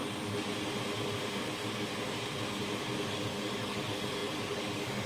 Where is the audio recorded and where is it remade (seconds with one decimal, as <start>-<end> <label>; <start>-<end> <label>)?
0.0-3.1 recorded; 3.1-5.1 remade